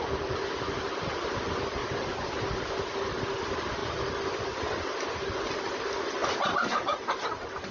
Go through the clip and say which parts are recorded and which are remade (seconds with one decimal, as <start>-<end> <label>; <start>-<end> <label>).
0.0-7.7 recorded